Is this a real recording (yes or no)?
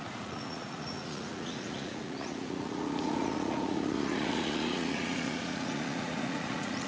no